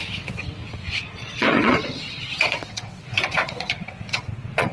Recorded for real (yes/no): no